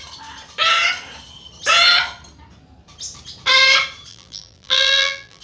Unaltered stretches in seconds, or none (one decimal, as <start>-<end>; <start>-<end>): 0.0-4.1